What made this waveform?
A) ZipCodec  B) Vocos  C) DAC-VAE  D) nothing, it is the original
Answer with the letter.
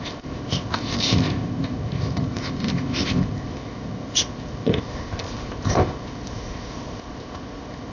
A